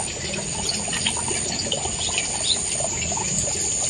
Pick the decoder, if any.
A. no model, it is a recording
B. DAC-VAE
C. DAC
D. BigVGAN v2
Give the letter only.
A